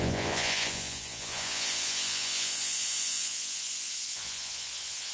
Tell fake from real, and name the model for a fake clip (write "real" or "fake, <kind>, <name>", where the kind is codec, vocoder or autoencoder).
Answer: fake, vocoder, Vocos